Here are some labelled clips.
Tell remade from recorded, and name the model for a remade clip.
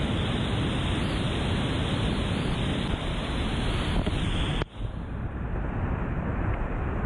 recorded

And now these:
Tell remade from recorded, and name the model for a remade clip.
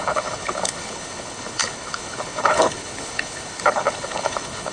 remade, codec, HILCodec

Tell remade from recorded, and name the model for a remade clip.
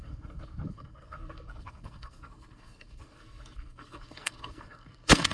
remade, codec, SNAC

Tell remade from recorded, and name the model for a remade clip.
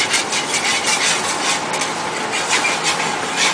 recorded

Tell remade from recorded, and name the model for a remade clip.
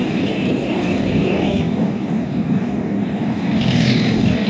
remade, codec, DAC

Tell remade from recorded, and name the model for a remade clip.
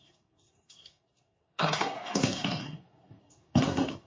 remade, codec, SNAC